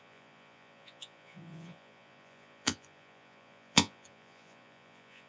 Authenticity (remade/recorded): remade